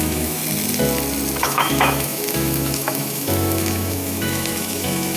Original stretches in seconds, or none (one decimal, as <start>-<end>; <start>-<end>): 0.4-1.4